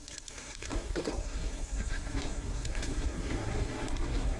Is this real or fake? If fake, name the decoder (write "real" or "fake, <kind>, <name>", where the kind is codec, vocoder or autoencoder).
fake, codec, SNAC